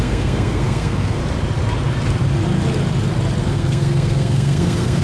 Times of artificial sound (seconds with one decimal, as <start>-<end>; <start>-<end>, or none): 0.0-1.2; 3.4-5.0